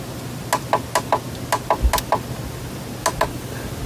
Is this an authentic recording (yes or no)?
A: yes